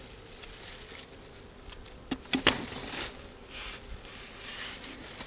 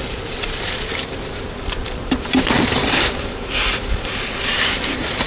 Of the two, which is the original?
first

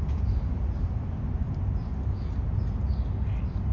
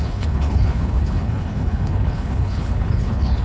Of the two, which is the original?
first